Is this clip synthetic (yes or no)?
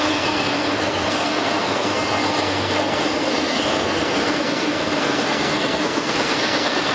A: yes